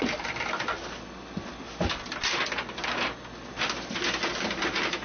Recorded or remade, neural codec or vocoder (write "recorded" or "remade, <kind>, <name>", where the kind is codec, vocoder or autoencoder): recorded